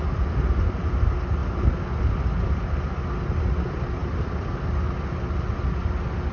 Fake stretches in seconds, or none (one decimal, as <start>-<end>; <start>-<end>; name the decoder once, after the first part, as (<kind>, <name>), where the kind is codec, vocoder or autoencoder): none